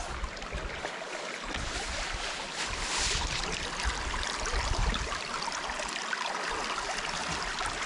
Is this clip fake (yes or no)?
no